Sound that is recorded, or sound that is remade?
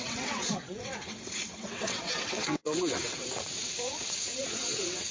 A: remade